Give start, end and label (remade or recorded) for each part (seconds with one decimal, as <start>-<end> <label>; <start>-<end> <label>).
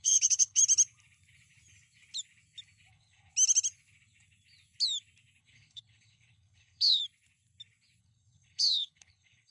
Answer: 0.0-0.6 remade; 0.6-2.9 recorded; 2.9-3.3 remade; 3.3-5.4 recorded; 5.4-7.0 remade; 7.0-8.0 recorded; 8.0-9.5 remade